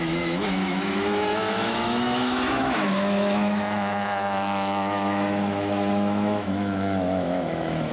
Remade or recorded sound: remade